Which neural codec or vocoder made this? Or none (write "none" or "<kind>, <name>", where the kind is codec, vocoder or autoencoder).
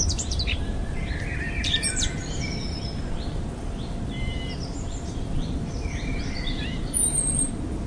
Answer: vocoder, BigVGAN v2